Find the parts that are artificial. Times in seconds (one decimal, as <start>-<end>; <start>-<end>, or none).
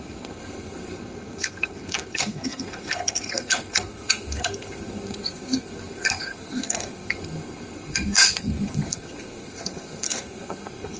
0.0-11.0